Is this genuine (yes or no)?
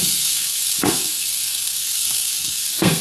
no